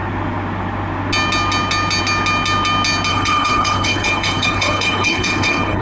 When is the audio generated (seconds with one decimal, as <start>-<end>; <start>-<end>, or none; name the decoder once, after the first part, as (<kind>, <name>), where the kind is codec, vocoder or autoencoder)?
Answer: 3.1-5.8 (codec, HILCodec)